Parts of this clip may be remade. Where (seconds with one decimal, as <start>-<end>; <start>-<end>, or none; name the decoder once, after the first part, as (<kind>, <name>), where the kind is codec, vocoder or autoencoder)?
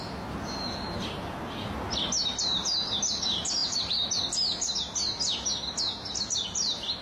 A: none